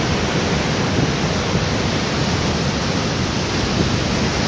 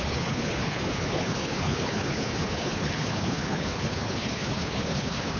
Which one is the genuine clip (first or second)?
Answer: first